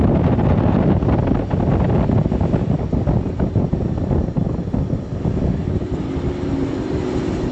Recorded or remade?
recorded